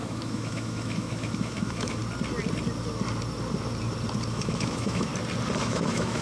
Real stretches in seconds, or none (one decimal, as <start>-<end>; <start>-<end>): 2.0-4.3; 5.1-5.6